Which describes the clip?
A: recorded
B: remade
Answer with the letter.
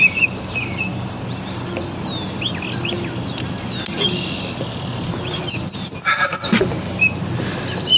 A